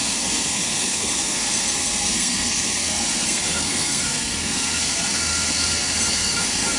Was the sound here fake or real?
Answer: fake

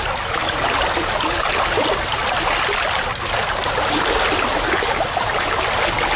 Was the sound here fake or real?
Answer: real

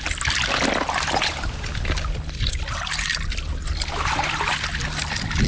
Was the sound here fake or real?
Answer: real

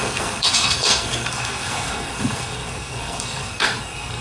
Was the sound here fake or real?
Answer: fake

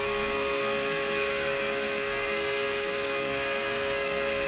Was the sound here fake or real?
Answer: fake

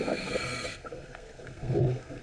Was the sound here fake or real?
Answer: fake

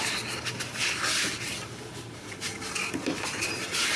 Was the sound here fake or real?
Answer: real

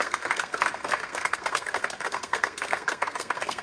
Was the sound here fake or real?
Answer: fake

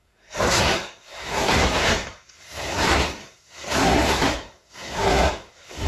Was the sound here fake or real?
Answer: fake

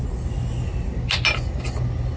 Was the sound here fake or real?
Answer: real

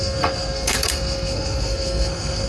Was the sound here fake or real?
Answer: fake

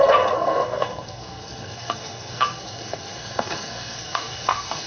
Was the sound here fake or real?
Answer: fake